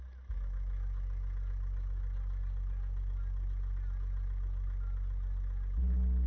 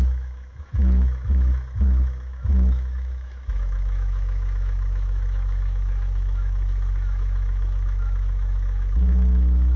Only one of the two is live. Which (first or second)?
first